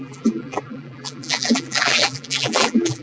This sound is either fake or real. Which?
fake